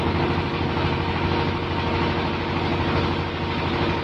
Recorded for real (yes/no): yes